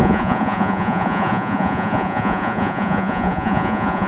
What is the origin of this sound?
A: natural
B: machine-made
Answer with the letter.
B